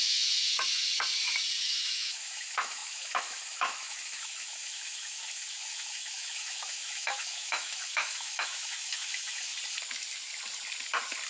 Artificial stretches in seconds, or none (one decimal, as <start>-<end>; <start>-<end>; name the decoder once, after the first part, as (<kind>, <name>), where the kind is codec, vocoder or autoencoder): 0.0-0.9 (autoencoder, DAC-VAE); 1.5-9.5